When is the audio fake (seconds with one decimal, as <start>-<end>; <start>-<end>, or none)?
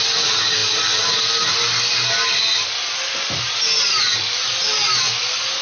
none